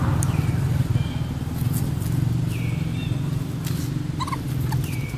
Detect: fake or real real